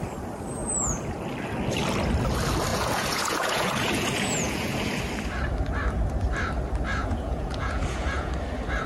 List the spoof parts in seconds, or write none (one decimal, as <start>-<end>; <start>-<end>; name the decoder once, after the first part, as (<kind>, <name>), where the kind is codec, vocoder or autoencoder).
0.6-1.1 (vocoder, Vocos); 2.7-5.0; 7.0-8.3